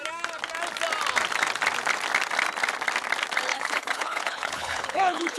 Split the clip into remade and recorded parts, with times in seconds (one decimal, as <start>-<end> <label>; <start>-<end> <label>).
0.0-3.5 recorded; 3.5-5.4 remade